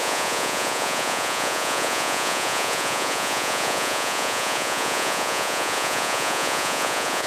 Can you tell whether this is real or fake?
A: fake